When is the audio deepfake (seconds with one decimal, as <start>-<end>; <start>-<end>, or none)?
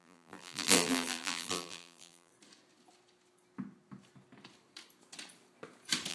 0.0-2.3